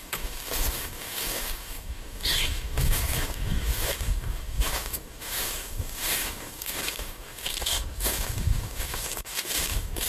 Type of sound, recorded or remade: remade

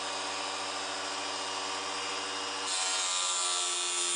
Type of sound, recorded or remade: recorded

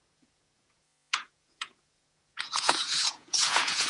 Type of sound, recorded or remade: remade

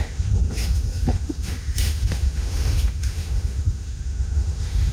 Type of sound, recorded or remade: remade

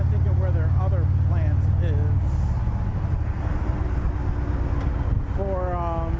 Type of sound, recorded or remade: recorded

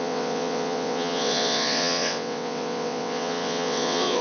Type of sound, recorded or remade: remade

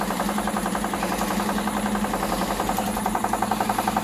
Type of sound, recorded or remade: recorded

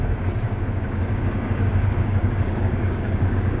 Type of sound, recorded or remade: remade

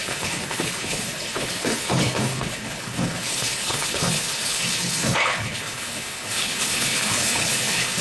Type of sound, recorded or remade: remade